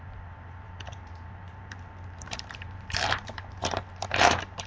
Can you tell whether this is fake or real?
fake